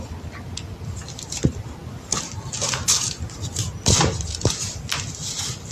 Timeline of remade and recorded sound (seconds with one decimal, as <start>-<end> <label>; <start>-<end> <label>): 0.0-5.7 recorded

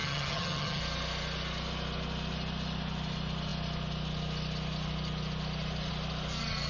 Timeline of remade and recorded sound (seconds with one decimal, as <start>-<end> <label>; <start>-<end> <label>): 0.0-0.8 remade; 0.8-6.7 recorded